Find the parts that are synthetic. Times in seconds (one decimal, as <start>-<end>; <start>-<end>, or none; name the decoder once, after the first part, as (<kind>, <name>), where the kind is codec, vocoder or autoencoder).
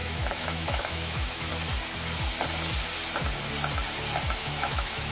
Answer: 0.0-1.5 (autoencoder, DAC-VAE); 4.4-5.1